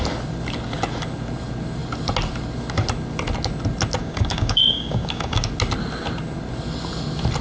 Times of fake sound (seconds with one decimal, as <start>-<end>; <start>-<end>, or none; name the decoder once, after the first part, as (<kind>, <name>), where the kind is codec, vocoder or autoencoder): 4.0-5.5 (codec, DAC)

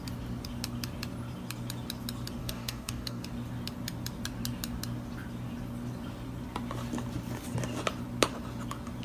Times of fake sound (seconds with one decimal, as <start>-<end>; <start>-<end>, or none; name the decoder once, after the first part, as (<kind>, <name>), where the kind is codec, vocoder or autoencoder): 2.4-3.2 (codec, DAC)

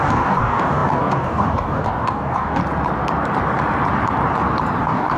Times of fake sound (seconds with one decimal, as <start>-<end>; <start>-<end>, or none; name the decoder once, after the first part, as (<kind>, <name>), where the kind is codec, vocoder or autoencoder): 0.0-2.6 (codec, DAC); 4.8-5.2

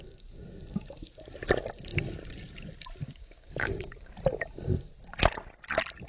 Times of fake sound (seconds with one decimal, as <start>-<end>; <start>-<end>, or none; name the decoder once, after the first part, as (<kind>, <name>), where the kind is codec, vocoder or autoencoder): 3.0-4.1 (codec, DAC)